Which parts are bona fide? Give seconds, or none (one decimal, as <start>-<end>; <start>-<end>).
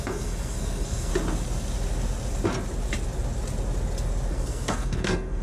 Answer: 1.1-4.3